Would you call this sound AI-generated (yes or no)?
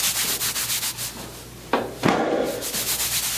no